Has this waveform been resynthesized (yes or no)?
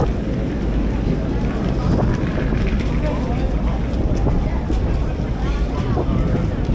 no